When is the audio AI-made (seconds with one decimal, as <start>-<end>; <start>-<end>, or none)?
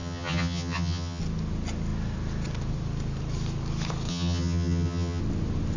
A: 0.0-1.2; 4.1-5.2